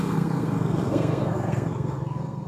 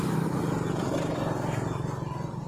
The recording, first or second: second